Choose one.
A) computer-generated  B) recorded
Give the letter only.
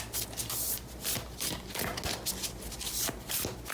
B